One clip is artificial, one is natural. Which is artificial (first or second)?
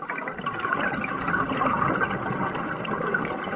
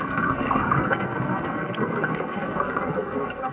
second